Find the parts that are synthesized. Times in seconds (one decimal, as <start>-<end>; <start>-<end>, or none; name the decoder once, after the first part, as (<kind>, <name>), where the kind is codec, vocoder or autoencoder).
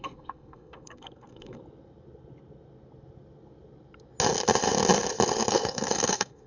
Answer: 0.0-1.6 (codec, SNAC); 5.5-6.5